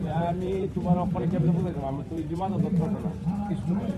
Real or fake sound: fake